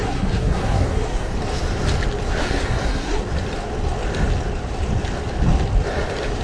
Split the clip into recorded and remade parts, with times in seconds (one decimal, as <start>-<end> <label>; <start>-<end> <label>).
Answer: 0.0-1.3 remade; 1.3-2.4 recorded; 2.4-3.2 remade; 3.2-6.4 recorded